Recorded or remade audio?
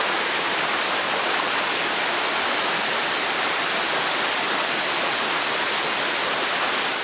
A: recorded